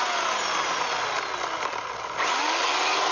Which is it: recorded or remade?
recorded